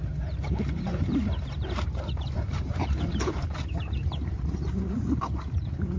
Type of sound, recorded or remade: remade